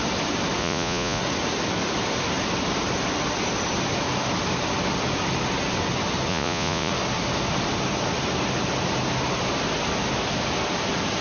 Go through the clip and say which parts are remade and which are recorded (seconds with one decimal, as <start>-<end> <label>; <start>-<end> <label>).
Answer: 0.0-0.6 recorded; 0.6-1.2 remade; 1.2-6.3 recorded; 6.3-6.9 remade; 6.9-11.2 recorded